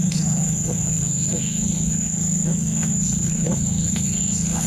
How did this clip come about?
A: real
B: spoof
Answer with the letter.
B